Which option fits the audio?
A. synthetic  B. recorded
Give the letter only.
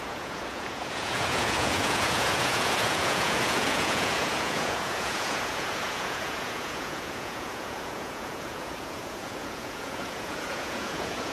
A